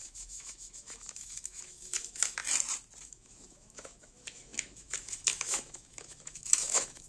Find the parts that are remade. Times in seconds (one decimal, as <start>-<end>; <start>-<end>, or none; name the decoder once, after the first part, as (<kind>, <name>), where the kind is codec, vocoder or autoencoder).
0.0-2.4 (autoencoder, DAC-VAE); 3.0-7.1